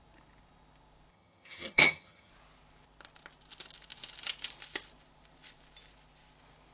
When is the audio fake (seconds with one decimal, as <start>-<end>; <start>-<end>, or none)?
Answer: 1.1-2.3